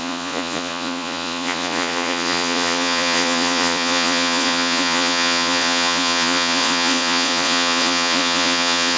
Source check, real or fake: fake